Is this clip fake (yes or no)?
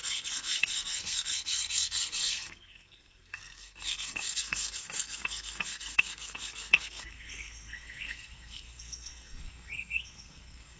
yes